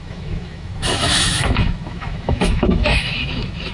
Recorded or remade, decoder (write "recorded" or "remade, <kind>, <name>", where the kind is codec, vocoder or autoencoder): remade, autoencoder, DAC-VAE